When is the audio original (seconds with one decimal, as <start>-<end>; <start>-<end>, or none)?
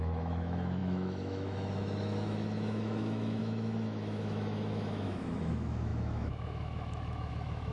none